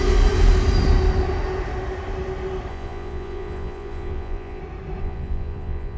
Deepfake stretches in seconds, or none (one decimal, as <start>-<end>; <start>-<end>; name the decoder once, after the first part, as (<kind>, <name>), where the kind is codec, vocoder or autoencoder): 2.7-4.6 (vocoder, Vocos); 5.0-6.0